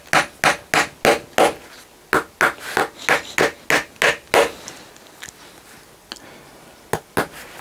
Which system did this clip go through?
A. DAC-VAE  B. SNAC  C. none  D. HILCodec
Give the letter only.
C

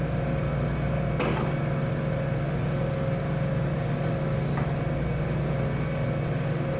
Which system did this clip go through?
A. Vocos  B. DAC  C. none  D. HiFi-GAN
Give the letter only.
C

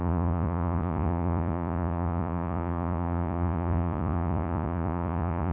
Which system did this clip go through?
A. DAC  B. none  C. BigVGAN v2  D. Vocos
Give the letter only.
D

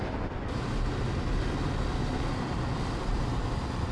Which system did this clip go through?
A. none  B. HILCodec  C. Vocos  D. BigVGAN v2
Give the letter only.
A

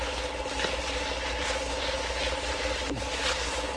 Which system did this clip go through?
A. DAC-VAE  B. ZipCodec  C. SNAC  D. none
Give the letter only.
D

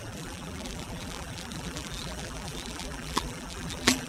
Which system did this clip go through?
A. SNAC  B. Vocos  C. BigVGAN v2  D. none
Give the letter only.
C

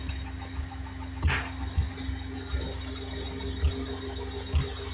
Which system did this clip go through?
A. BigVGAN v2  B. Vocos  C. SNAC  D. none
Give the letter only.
D